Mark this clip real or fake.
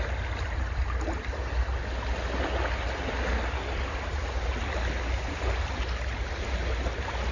real